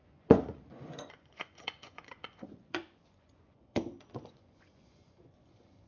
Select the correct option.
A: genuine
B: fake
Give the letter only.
B